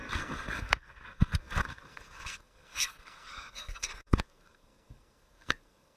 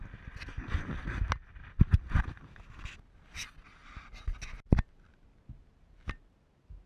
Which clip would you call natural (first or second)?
second